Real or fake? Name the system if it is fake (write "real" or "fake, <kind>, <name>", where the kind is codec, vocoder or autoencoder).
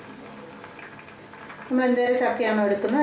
real